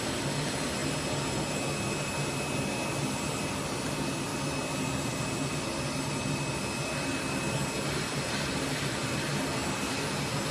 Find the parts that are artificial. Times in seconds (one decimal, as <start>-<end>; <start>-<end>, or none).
none